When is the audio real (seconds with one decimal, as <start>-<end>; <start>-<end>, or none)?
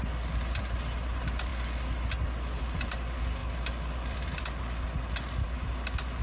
0.0-6.2